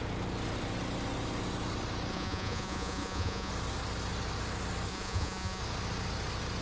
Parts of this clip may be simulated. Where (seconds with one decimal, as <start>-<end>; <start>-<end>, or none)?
2.1-3.5; 4.9-5.6